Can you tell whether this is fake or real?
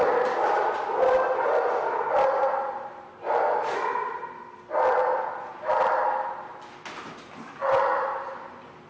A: real